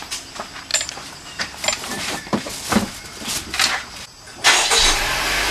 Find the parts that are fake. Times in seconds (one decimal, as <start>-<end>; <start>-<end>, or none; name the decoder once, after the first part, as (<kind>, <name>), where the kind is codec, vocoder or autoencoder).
0.7-2.4 (vocoder, BigVGAN v2)